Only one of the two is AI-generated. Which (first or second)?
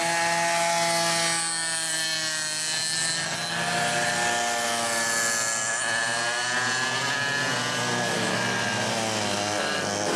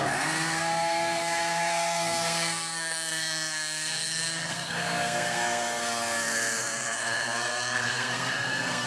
second